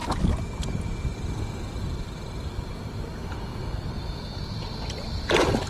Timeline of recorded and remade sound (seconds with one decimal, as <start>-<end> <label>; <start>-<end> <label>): 0.0-3.5 recorded; 3.5-4.4 remade; 4.4-5.7 recorded

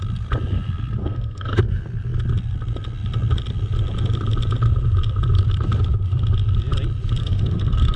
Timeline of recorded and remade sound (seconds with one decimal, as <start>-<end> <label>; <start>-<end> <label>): 0.0-1.0 recorded; 1.0-1.6 remade; 1.6-7.2 recorded; 7.2-8.0 remade